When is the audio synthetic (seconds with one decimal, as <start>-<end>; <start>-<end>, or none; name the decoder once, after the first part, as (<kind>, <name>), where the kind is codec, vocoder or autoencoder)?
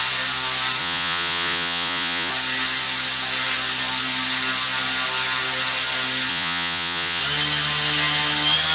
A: 0.8-2.3 (vocoder, Vocos); 6.3-7.2